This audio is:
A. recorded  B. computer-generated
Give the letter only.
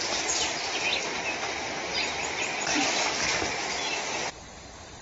A